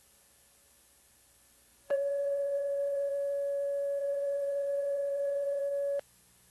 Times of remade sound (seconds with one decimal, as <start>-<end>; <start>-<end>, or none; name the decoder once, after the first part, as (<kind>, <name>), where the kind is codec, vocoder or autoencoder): 1.7-3.1 (vocoder, Vocos); 4.0-5.6